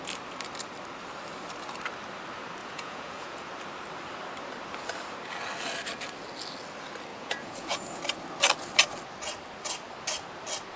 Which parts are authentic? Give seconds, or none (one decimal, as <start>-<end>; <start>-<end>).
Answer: 0.0-2.6; 3.5-7.1; 8.0-10.8